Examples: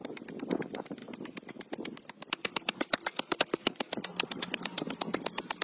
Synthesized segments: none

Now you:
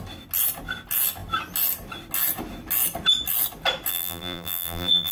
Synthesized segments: 3.9-5.1

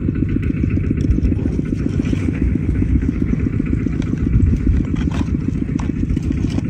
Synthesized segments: 2.2-3.3

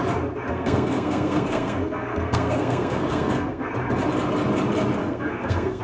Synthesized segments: 0.5-3.7; 5.0-5.8

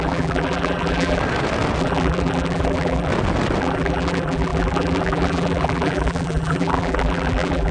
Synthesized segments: 0.0-1.2; 1.8-3.1; 3.6-7.7

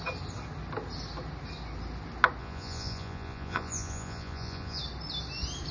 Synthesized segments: 2.4-4.8

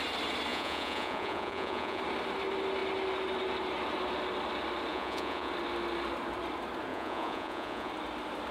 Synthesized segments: 0.5-2.0; 4.9-5.5; 6.9-7.9

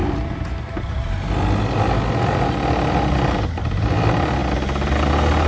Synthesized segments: 0.0-1.0